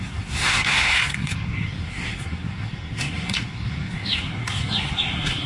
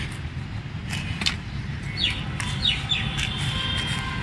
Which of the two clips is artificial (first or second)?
first